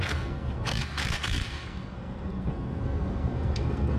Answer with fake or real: fake